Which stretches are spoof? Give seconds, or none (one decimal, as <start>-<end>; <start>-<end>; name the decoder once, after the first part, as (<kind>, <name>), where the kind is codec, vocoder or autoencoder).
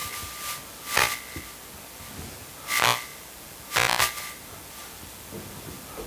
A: none